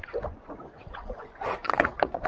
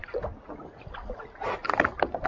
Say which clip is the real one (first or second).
second